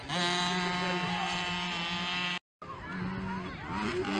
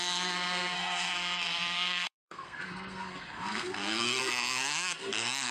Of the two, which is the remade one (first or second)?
second